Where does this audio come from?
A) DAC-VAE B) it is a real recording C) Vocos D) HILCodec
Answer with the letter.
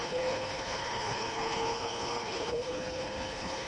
D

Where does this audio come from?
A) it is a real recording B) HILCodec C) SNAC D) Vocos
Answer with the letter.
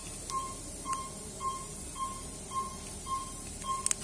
A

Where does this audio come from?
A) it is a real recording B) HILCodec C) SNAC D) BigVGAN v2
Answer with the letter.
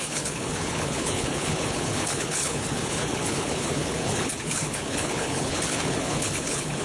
B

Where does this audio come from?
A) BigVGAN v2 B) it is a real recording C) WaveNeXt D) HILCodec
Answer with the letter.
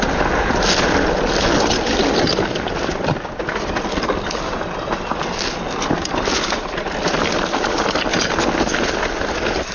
B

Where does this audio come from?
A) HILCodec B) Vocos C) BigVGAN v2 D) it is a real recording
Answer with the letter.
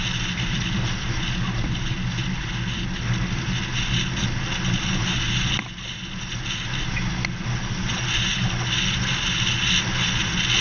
D